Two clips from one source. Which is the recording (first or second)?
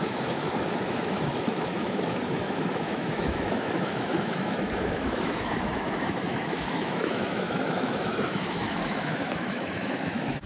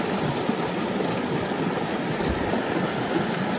second